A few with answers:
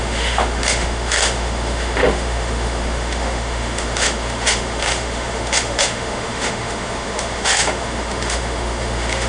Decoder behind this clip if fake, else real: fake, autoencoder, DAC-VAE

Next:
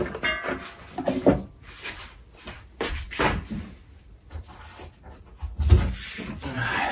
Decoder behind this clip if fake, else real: real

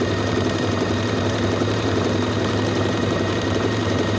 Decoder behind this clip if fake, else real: fake, vocoder, BigVGAN v2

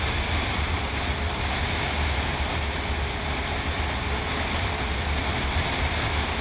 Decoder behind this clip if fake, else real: real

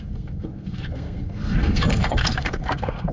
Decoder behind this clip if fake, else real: fake, codec, SNAC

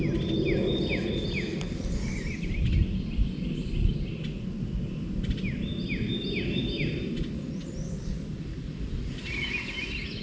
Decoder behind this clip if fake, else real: real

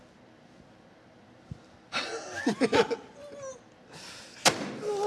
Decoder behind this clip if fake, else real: real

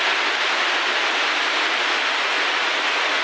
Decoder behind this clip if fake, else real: real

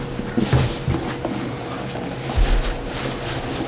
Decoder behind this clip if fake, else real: real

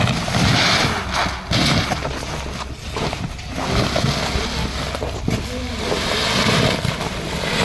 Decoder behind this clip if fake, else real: real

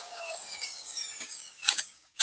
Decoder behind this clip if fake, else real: fake, codec, DAC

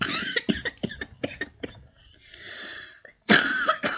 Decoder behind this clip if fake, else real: fake, vocoder, BigVGAN v2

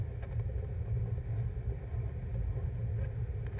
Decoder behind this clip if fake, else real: real